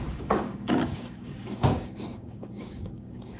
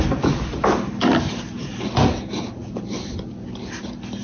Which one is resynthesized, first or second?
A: first